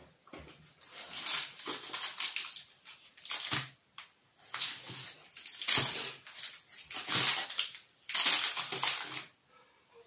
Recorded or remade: recorded